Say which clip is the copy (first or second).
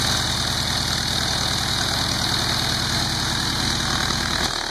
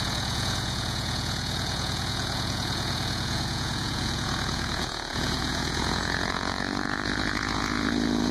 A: second